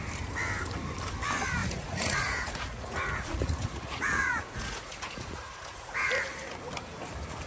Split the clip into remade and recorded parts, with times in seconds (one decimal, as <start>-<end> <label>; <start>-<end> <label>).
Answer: 0.0-1.6 recorded; 1.6-6.1 remade; 6.1-7.5 recorded